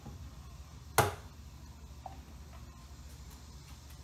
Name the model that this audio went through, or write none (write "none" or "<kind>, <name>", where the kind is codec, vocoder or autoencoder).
none